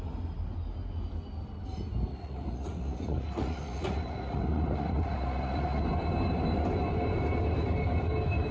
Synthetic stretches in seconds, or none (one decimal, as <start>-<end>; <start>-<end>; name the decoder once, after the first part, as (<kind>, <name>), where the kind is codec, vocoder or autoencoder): 2.1-5.8 (vocoder, Vocos)